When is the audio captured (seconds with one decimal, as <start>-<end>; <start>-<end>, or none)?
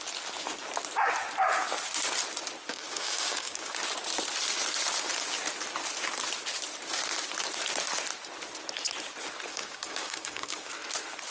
0.0-2.7; 3.7-9.5; 10.7-11.3